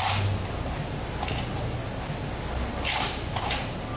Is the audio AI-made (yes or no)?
no